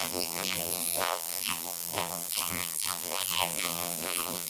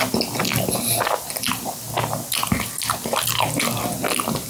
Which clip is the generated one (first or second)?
first